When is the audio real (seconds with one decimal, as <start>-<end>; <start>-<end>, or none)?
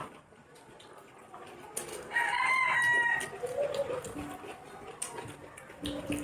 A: 0.0-1.9; 2.5-6.2